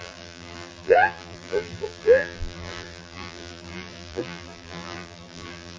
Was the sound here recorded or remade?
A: remade